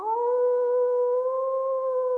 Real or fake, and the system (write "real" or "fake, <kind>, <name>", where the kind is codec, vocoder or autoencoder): real